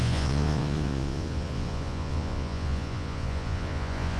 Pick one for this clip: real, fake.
fake